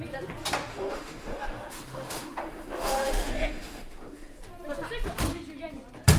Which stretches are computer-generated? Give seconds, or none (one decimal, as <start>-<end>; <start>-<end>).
0.7-4.4

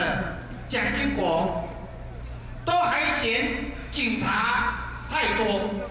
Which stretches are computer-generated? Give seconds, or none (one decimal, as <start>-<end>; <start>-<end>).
3.8-4.6